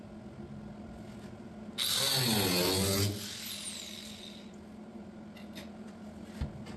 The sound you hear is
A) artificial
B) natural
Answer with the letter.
B